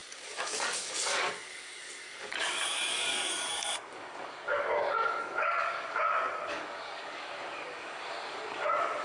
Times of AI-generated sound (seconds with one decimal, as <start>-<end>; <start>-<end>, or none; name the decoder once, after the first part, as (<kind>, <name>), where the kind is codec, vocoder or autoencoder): 0.0-9.0 (codec, DAC)